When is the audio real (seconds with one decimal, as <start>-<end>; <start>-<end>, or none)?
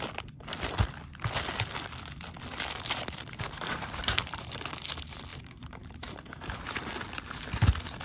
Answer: 0.0-3.2; 4.7-5.3; 6.8-8.0